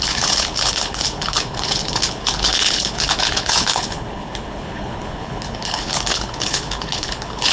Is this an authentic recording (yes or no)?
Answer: no